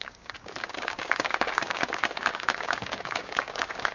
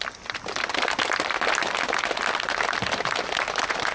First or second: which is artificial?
first